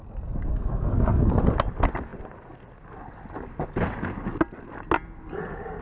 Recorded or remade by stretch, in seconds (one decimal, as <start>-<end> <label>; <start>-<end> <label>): 0.0-0.5 recorded; 0.5-1.3 remade; 1.3-5.8 recorded